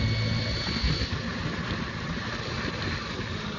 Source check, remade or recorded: recorded